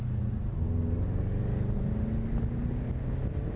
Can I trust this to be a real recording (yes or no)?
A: yes